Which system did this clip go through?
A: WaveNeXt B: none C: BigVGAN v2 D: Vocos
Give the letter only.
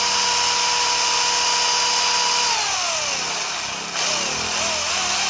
B